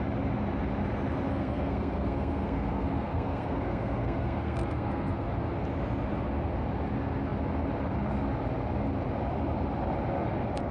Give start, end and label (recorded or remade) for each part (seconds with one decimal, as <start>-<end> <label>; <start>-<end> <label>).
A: 0.0-1.3 recorded; 1.3-5.3 remade; 5.3-10.7 recorded